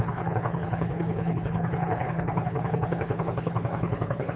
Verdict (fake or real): fake